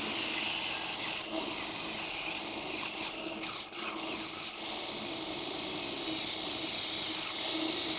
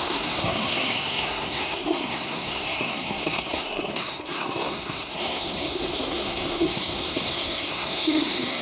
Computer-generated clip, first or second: second